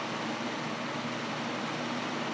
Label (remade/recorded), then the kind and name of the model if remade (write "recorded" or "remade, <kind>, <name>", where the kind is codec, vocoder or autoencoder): recorded